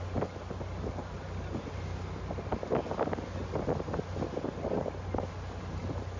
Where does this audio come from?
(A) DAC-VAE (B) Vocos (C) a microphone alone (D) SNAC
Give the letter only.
C